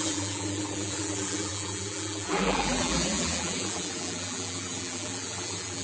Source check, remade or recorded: remade